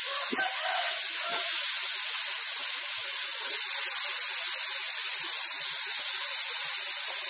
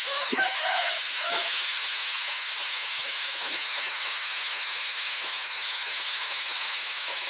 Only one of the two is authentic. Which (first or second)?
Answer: first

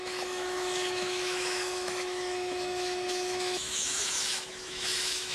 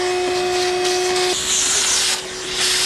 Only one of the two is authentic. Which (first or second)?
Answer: second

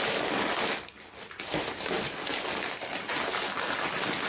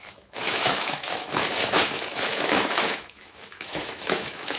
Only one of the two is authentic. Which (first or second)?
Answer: first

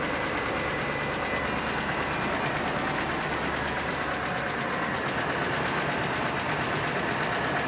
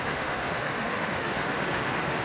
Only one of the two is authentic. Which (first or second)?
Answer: first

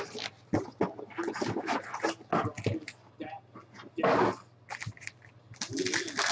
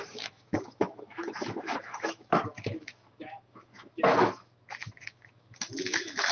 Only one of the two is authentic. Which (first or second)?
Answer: first